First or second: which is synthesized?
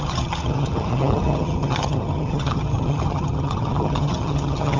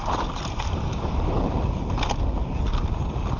first